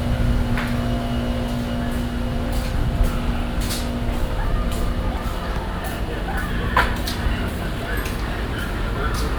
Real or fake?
real